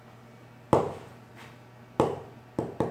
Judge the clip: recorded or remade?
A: recorded